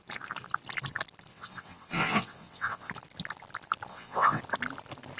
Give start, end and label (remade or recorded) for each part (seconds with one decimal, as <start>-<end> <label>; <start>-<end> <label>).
0.0-1.3 recorded; 1.3-2.9 remade; 2.9-3.9 recorded; 3.9-4.4 remade; 4.4-5.2 recorded